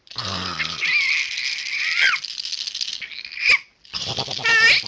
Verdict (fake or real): real